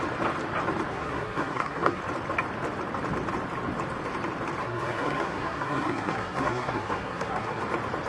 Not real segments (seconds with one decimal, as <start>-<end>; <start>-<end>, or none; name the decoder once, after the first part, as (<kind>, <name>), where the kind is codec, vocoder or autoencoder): 0.9-2.0 (codec, SNAC); 4.6-7.6